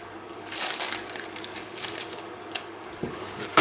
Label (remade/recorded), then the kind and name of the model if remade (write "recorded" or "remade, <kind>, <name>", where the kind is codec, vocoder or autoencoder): remade, codec, DAC